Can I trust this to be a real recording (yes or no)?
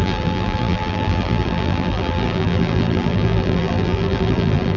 no